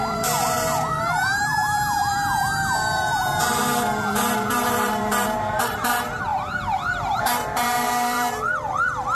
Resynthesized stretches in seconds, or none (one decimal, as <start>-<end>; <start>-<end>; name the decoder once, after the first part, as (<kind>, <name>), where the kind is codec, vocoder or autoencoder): 0.0-9.1 (vocoder, BigVGAN v2)